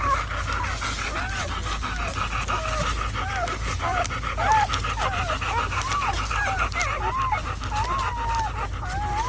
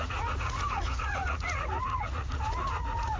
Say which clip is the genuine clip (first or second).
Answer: first